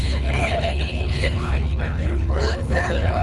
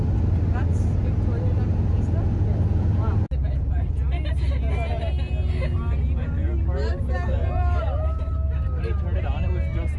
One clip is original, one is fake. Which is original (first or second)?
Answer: second